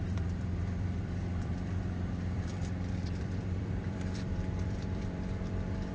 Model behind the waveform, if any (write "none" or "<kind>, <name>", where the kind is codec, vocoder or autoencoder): vocoder, BigVGAN v2